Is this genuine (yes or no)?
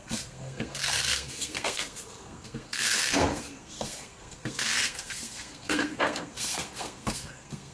no